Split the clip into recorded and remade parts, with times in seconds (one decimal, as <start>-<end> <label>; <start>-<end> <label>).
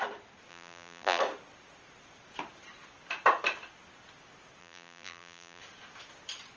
0.0-0.5 recorded; 0.5-1.2 remade; 1.2-4.6 recorded; 4.6-5.6 remade; 5.6-6.6 recorded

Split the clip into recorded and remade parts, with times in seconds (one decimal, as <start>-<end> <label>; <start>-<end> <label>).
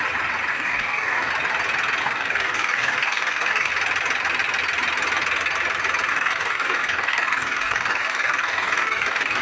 0.0-0.5 recorded; 0.5-1.3 remade; 1.3-2.0 recorded; 2.0-3.7 remade; 3.7-6.1 recorded; 6.1-9.4 remade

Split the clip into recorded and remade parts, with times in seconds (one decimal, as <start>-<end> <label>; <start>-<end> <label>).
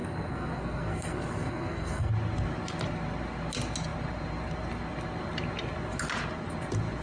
0.0-2.1 remade; 2.1-7.0 recorded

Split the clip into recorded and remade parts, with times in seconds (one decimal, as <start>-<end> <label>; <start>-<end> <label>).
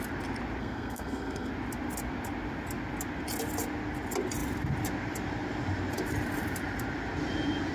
0.0-0.6 recorded; 0.6-1.5 remade; 1.5-7.7 recorded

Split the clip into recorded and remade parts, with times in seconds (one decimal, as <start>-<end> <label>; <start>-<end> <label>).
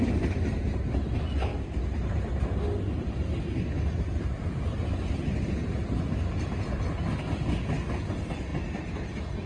0.0-9.5 recorded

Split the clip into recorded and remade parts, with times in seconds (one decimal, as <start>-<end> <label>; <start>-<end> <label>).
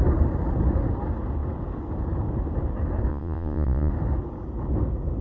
0.0-3.1 recorded; 3.1-3.9 remade; 3.9-5.2 recorded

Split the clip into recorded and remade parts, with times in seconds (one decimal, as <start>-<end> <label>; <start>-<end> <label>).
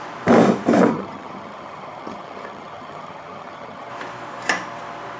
0.0-0.9 recorded; 0.9-3.9 remade; 3.9-5.2 recorded